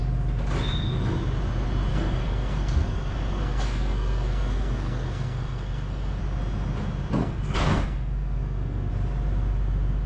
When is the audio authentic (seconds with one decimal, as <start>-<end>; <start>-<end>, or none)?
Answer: 0.0-1.9; 6.2-7.2; 8.9-10.1